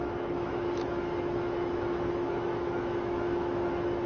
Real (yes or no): no